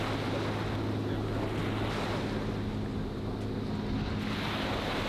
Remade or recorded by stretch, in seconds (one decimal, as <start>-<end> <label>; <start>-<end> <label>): 0.0-5.1 recorded